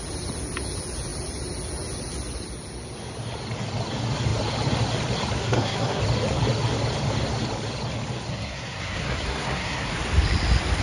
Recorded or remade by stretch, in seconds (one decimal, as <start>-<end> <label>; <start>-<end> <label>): 0.0-5.4 recorded; 5.4-6.0 remade; 6.0-8.3 recorded; 8.3-9.9 remade; 9.9-10.8 recorded